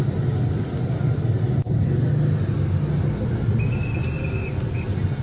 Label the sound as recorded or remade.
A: recorded